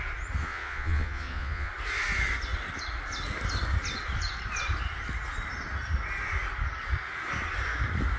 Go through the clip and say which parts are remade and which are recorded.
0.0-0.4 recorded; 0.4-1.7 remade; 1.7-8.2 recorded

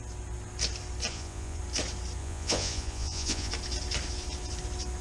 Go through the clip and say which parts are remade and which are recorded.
0.0-1.1 recorded; 1.1-1.6 remade; 1.6-2.2 recorded; 2.2-3.5 remade; 3.5-5.0 recorded

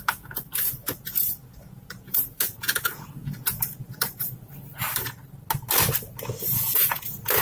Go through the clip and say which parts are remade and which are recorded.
0.0-4.8 remade; 4.8-6.4 recorded; 6.4-7.4 remade

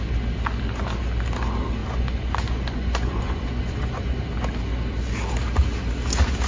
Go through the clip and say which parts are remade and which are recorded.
0.0-1.8 recorded; 1.8-4.2 remade; 4.2-6.5 recorded

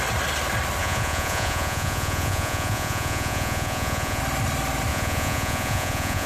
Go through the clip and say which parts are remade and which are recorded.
0.0-0.8 recorded; 0.8-4.2 remade; 4.2-4.9 recorded; 4.9-6.3 remade

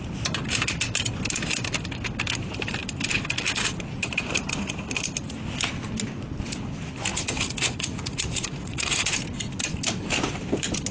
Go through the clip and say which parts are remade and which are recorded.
0.0-7.1 recorded; 7.1-9.1 remade; 9.1-10.9 recorded

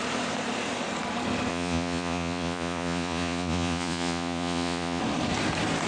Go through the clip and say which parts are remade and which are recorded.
0.0-1.5 recorded; 1.5-5.0 remade; 5.0-5.9 recorded

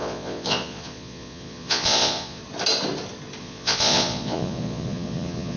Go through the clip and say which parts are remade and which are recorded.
0.0-2.4 remade; 2.4-3.4 recorded; 3.4-5.6 remade